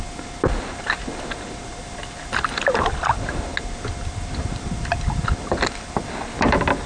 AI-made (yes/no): no